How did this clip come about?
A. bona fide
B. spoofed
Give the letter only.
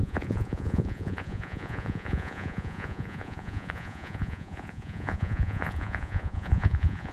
B